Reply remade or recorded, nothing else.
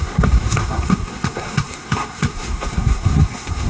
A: remade